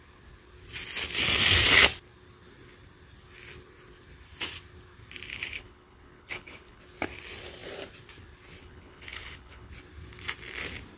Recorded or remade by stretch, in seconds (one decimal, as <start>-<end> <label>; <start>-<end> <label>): 0.0-5.3 recorded; 5.3-6.8 remade; 6.8-8.6 recorded; 8.6-9.7 remade; 9.7-11.0 recorded